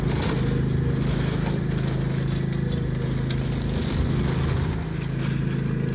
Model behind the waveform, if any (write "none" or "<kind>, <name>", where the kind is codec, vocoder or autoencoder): none